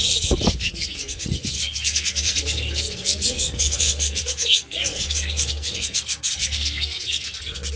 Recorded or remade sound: remade